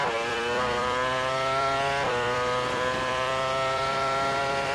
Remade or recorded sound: remade